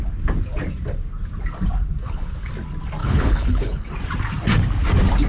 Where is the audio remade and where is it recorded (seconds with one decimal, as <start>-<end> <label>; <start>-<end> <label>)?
0.0-2.0 recorded; 2.0-2.5 remade; 2.5-3.0 recorded; 3.0-3.9 remade; 3.9-5.3 recorded